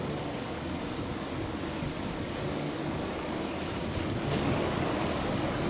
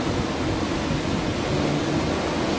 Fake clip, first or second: first